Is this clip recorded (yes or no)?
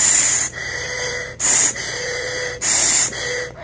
no